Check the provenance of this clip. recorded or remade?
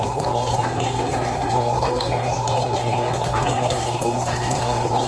remade